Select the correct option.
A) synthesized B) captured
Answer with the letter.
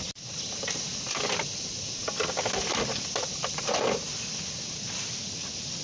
B